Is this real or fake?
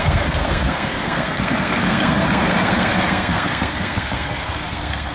fake